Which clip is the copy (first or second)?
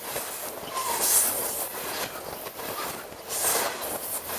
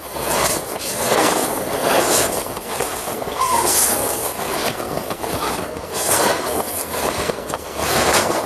second